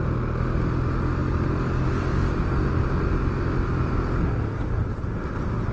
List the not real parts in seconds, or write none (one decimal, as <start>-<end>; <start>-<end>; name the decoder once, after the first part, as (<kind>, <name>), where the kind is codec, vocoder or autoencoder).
none